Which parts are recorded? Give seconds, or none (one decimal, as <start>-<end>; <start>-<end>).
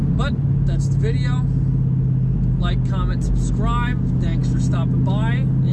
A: 0.0-5.7